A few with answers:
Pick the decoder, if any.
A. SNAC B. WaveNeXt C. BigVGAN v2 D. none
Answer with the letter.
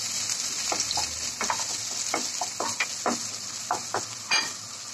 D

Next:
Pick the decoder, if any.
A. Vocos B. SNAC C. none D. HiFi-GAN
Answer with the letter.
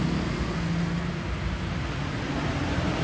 C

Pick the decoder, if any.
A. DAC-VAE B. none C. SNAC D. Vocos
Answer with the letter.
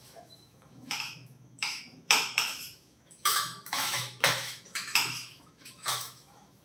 A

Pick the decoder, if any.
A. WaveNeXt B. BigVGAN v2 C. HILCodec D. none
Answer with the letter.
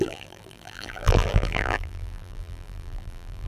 B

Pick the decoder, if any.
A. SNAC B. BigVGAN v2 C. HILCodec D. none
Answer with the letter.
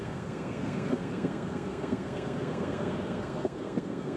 A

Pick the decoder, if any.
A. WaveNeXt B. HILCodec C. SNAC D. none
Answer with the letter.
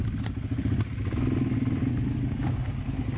D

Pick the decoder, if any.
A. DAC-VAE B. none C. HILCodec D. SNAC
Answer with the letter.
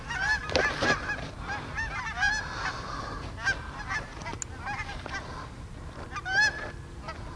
B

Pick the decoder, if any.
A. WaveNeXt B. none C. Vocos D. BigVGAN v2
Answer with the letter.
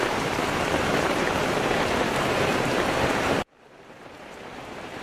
D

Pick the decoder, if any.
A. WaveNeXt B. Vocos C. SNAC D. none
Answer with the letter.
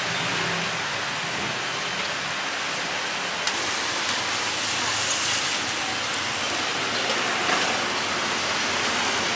D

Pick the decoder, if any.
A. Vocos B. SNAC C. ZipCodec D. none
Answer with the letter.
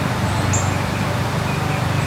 D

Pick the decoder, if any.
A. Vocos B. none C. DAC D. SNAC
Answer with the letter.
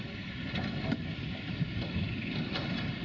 B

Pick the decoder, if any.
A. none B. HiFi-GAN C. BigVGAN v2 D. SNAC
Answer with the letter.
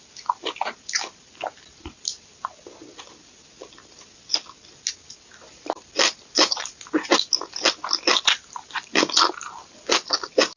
A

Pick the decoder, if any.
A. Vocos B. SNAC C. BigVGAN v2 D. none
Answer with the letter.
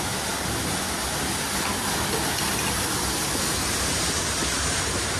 D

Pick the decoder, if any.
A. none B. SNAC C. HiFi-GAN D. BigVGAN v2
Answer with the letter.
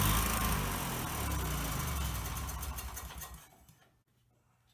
A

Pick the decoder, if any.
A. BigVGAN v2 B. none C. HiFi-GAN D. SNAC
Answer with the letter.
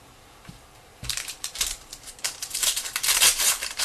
A